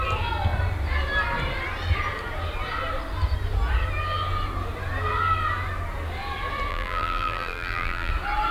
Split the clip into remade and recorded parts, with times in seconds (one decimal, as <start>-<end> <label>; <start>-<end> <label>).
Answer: 0.0-6.7 recorded; 6.7-8.1 remade; 8.1-8.5 recorded